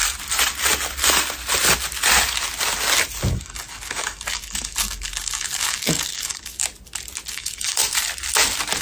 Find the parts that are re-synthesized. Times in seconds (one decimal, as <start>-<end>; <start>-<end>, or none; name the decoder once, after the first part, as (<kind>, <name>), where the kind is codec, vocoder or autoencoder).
3.3-6.6 (codec, DAC); 7.3-7.8